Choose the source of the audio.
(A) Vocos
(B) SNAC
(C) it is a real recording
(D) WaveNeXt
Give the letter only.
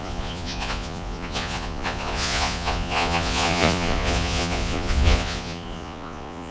A